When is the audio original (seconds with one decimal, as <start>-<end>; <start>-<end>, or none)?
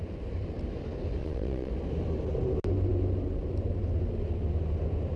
0.0-1.2; 1.7-5.2